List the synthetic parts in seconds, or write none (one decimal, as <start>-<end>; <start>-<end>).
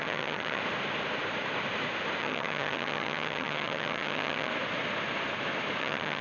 0.0-0.6; 2.2-4.5; 5.8-6.2